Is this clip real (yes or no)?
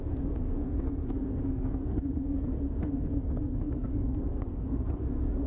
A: no